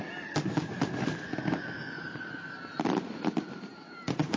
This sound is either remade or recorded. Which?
recorded